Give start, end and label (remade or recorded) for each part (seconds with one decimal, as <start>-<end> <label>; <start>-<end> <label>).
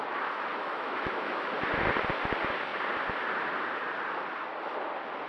0.0-0.5 recorded; 0.5-1.5 remade; 1.5-5.3 recorded